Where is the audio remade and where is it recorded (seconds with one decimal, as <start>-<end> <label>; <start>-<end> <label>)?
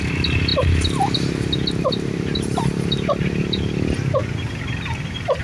0.0-0.5 recorded; 0.5-3.7 remade; 3.7-5.4 recorded